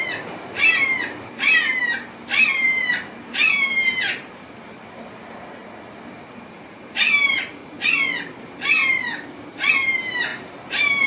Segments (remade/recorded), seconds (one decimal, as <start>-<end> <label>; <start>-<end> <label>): 0.0-5.6 remade; 5.6-6.3 recorded; 6.3-7.6 remade; 7.6-8.4 recorded; 8.4-8.8 remade; 8.8-9.7 recorded; 9.7-11.1 remade